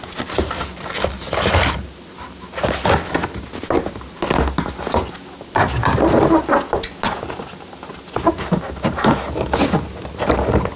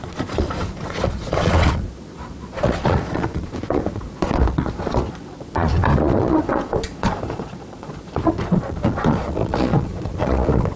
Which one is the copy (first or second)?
second